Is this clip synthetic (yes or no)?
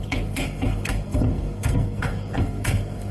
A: yes